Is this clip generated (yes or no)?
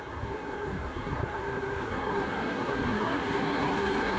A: yes